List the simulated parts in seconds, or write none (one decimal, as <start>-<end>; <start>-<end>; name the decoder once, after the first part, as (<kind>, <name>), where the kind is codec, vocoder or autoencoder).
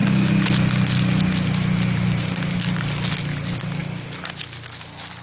none